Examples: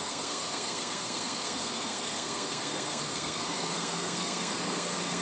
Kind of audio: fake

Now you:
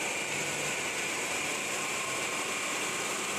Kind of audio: fake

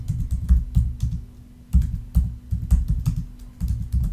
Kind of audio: real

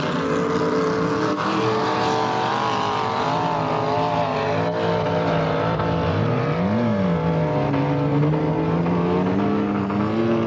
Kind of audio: real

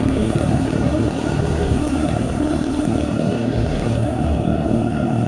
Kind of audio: fake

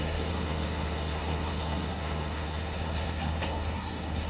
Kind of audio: fake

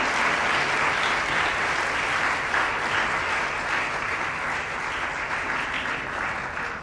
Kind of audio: real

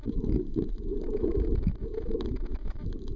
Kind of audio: fake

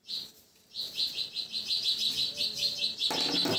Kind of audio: real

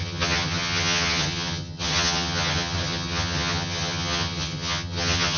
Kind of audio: fake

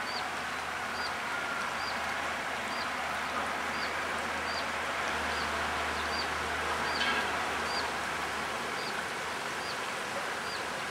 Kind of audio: real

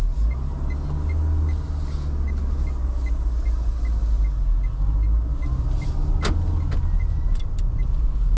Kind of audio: real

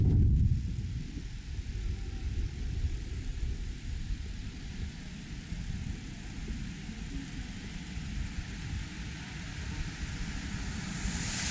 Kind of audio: real